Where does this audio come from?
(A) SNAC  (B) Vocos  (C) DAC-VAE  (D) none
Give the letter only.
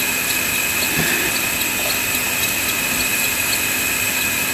D